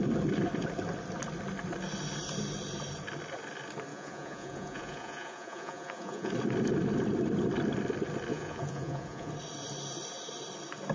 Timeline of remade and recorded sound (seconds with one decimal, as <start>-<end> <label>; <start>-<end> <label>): 0.0-3.9 recorded; 3.9-6.3 remade; 6.3-8.3 recorded; 8.3-9.3 remade; 9.3-10.9 recorded